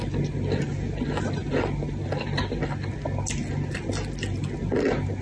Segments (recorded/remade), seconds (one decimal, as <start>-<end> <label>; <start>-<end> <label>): 0.0-5.2 recorded